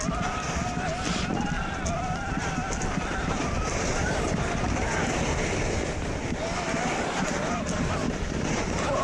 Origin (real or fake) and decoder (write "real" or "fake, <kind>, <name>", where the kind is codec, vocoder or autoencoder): real